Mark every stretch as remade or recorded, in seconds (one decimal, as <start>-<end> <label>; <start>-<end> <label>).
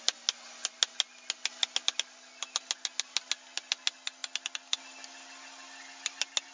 0.0-6.5 recorded